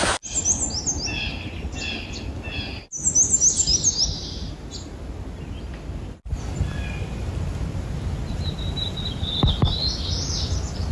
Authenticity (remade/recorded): recorded